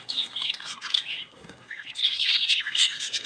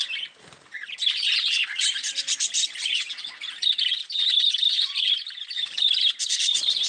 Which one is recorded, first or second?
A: second